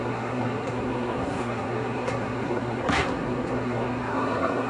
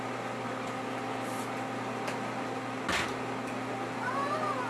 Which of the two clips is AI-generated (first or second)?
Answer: first